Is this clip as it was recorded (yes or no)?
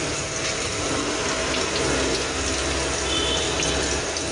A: yes